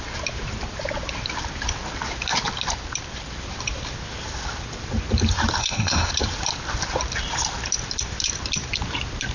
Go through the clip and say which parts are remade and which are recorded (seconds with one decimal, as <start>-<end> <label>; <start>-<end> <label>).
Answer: 0.0-5.6 recorded; 5.6-6.1 remade; 6.1-9.3 recorded